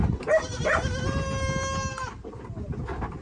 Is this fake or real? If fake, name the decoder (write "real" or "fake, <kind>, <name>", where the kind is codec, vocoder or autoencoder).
real